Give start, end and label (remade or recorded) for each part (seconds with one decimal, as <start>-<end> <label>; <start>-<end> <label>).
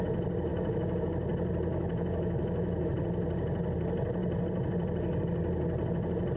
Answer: 0.0-0.5 recorded; 0.5-1.1 remade; 1.1-1.7 recorded; 1.7-2.9 remade; 2.9-6.4 recorded